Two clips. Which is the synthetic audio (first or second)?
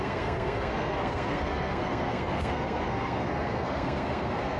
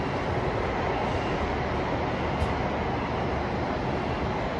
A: first